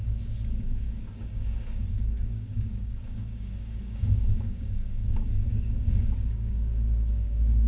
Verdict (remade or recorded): remade